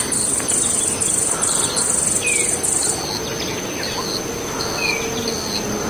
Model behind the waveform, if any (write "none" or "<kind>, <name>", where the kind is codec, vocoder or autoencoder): none